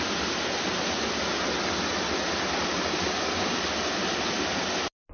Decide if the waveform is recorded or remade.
recorded